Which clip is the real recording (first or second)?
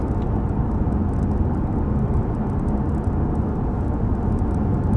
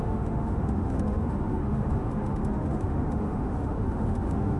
first